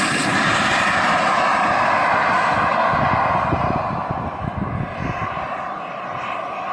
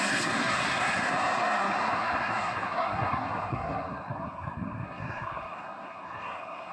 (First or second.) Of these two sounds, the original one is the first